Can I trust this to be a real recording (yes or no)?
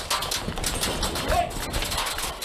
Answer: yes